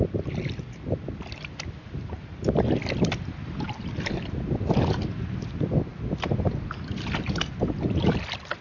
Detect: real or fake real